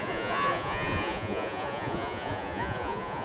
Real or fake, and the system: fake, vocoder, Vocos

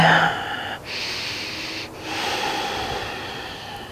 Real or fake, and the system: real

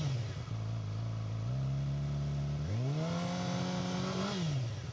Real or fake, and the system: real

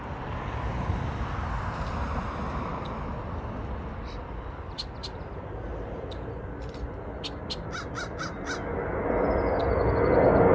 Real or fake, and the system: real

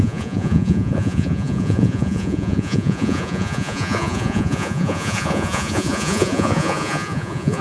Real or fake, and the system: fake, vocoder, Vocos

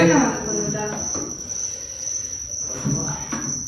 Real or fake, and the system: real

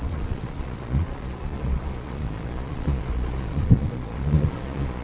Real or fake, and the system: fake, vocoder, Vocos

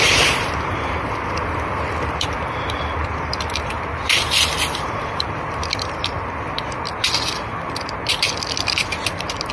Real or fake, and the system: real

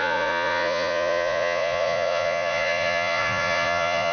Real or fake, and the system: fake, vocoder, Vocos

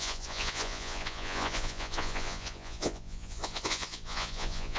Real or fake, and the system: fake, vocoder, Vocos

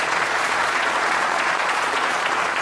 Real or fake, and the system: fake, vocoder, Vocos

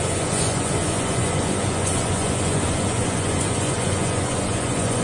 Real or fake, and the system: fake, vocoder, Vocos